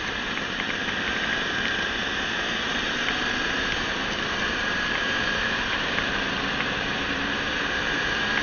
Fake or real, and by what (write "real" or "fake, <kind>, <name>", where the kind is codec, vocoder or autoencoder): fake, vocoder, BigVGAN v2